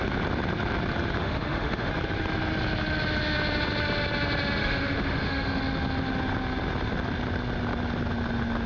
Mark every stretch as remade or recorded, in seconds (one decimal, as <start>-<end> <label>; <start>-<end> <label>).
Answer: 0.0-1.2 recorded; 1.2-1.9 remade; 1.9-4.6 recorded; 4.6-5.6 remade; 5.6-8.7 recorded